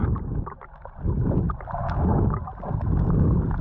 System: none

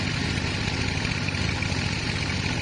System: none